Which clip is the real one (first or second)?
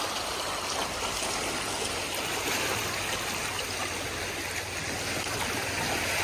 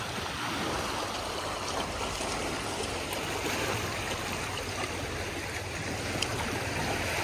first